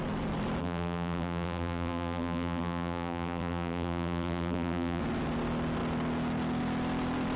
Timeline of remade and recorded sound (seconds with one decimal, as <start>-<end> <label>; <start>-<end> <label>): 0.0-0.6 recorded; 0.6-5.0 remade; 5.0-7.4 recorded